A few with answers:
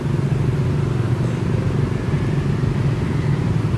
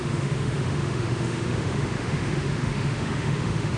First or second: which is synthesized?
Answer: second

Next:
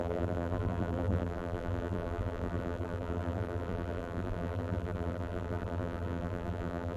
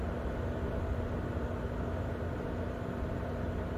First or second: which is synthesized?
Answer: first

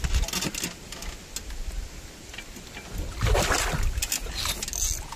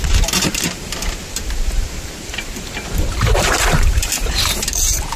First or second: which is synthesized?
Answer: second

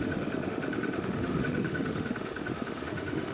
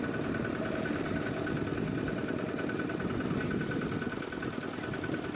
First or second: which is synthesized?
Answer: first